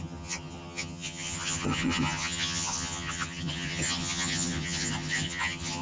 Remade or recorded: remade